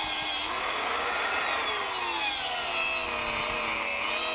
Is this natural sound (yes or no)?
yes